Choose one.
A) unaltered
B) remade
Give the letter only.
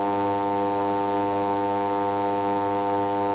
B